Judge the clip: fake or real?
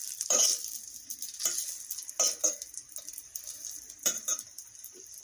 real